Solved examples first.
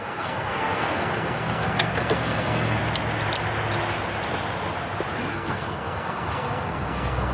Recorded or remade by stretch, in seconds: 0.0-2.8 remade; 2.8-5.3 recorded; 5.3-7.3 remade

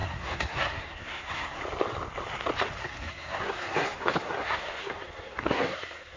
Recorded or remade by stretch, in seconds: 0.0-1.6 remade; 1.6-2.8 recorded; 2.8-6.2 remade

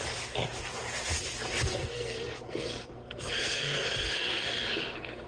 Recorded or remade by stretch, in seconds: 0.0-1.8 recorded; 1.8-5.3 remade

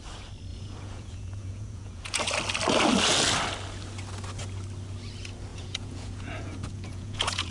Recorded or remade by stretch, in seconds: 0.0-0.5 recorded; 0.5-2.2 remade; 2.2-5.5 recorded; 5.5-7.5 remade

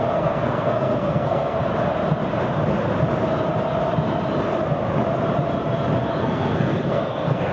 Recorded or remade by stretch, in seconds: 0.0-1.7 remade; 1.7-6.2 recorded; 6.2-7.5 remade